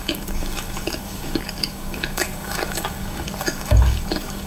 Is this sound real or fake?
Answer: fake